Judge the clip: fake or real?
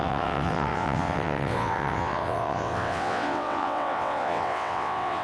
fake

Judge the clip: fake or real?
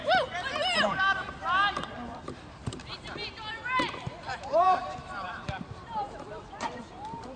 fake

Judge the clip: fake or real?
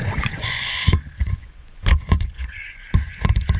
fake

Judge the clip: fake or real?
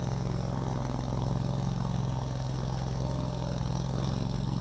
fake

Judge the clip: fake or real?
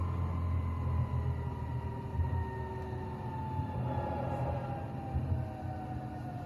real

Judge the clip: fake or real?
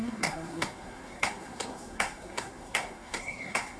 fake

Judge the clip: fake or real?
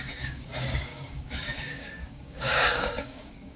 fake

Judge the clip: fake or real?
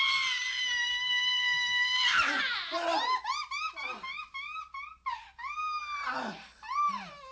fake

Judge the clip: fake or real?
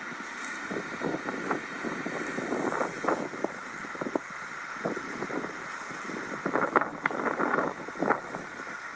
fake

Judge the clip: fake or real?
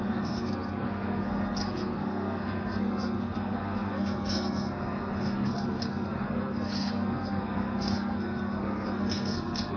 fake